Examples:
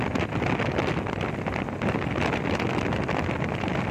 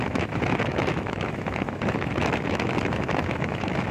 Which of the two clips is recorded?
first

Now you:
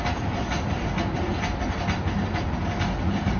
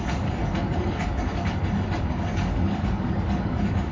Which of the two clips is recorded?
first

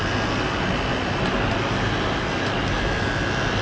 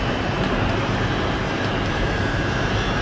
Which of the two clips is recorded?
first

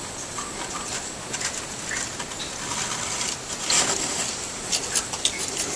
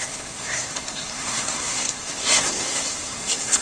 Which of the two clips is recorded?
first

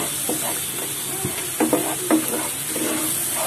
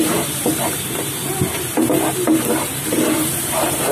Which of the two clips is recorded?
first